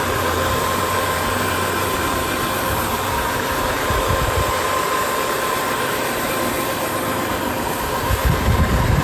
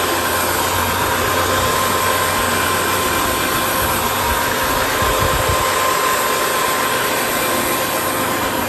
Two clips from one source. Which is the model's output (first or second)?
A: first